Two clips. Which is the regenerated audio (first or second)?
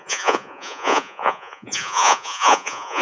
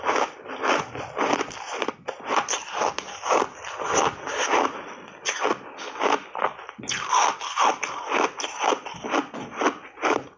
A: first